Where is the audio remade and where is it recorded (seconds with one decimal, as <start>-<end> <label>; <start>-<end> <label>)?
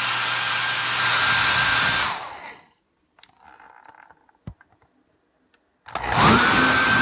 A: 0.0-7.0 recorded